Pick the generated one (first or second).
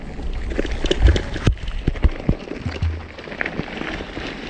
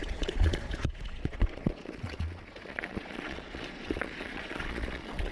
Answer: second